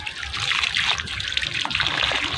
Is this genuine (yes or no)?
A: yes